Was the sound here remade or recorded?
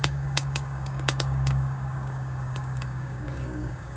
remade